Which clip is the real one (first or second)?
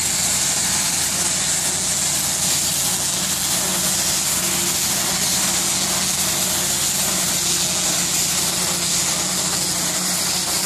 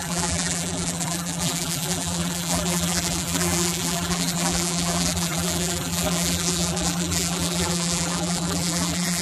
first